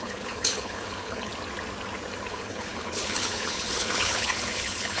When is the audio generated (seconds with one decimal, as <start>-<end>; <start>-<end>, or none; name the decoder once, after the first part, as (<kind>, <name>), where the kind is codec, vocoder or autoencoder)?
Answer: 0.0-1.3 (codec, HILCodec); 2.3-5.0